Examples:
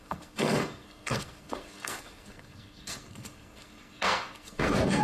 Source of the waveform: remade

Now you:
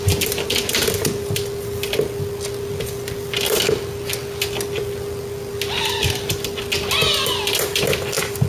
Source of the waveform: recorded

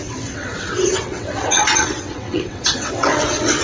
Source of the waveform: remade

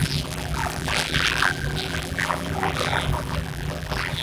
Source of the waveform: remade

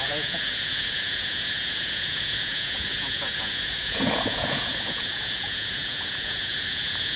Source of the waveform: remade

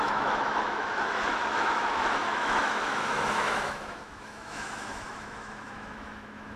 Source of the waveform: remade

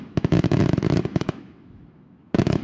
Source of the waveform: remade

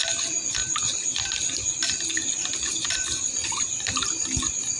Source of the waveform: recorded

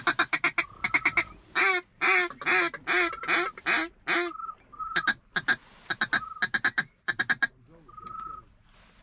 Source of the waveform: recorded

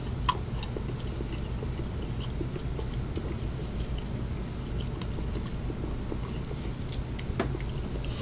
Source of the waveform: recorded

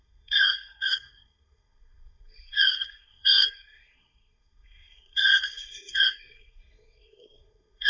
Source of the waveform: remade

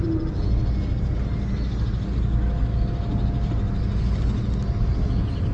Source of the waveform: recorded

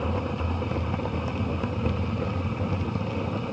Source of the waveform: recorded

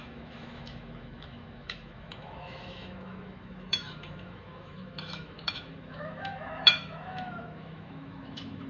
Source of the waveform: remade